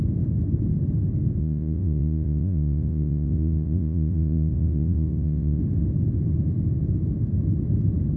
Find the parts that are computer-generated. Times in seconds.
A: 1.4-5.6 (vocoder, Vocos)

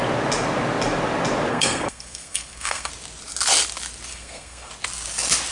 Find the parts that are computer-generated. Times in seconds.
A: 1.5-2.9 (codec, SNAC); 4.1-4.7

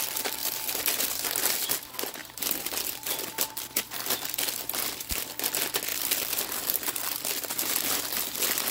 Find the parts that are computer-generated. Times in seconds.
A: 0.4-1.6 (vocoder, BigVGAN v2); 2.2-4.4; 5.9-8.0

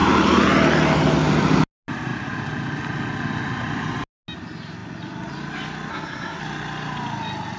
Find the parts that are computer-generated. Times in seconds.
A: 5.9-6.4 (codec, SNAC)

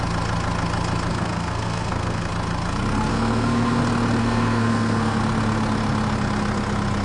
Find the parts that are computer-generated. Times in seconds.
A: 1.1-2.3 (codec, SNAC); 3.1-3.8; 4.2-5.2